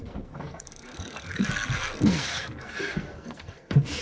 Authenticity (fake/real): fake